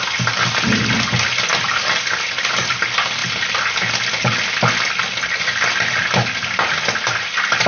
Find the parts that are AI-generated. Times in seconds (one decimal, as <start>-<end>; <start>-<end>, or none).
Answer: none